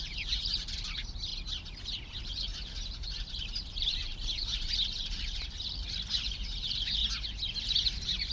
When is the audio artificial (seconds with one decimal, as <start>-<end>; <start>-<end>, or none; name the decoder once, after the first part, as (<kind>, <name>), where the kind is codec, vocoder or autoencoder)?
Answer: 0.0-1.3 (vocoder, BigVGAN v2); 2.2-7.0; 7.6-8.3